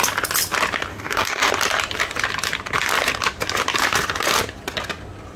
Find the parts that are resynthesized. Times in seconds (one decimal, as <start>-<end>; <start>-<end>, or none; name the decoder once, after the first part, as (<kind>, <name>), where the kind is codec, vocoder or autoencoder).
0.9-1.5 (codec, DAC)